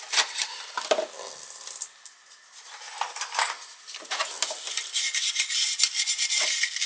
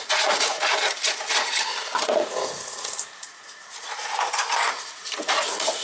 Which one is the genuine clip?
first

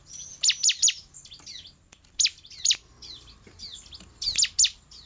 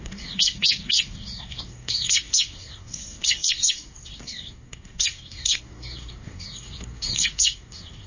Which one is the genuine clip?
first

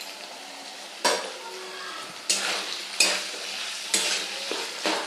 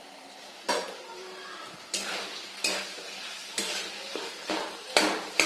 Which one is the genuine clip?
first